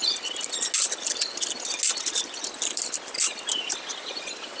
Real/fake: real